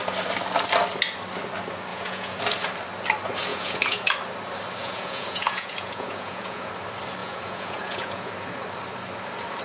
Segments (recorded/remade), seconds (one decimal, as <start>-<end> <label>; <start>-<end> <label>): 0.0-1.9 recorded; 1.9-2.4 remade; 2.4-3.5 recorded; 3.5-4.1 remade; 4.1-4.8 recorded; 4.8-6.7 remade; 6.7-7.2 recorded; 7.2-8.3 remade; 8.3-9.6 recorded